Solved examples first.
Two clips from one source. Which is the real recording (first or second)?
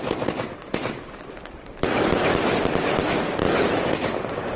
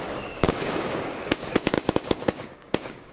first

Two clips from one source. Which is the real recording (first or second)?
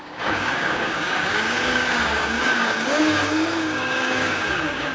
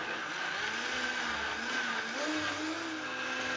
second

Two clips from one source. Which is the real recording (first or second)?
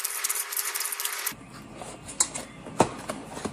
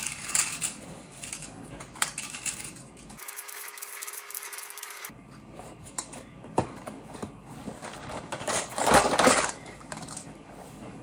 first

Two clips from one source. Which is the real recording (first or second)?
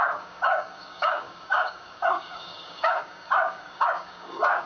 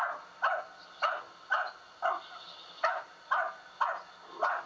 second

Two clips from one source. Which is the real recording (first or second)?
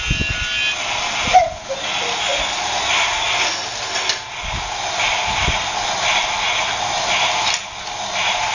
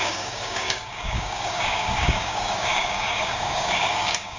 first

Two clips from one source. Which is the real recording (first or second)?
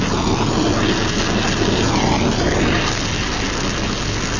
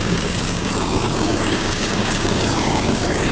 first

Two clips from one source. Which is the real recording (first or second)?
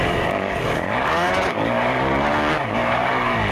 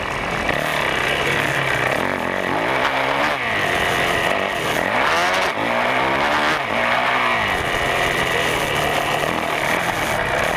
second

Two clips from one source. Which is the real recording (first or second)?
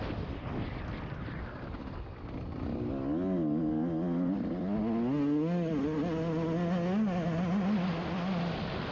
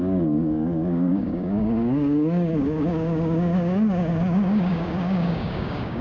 first